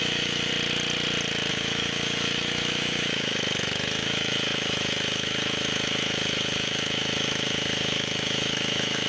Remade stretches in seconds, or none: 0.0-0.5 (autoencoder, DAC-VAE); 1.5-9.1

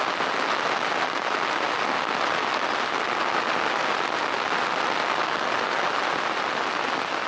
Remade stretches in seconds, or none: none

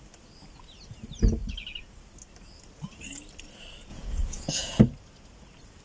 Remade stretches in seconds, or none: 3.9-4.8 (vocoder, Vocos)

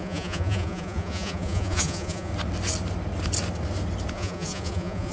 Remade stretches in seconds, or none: 0.0-2.3 (vocoder, Vocos); 4.1-5.1